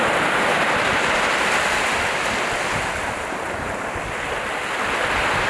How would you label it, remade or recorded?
recorded